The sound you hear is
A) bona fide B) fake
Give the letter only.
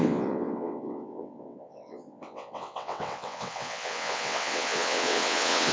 B